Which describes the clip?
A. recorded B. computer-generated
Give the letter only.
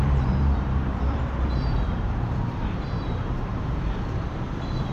B